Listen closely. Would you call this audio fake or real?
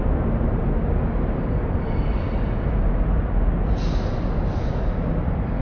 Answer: real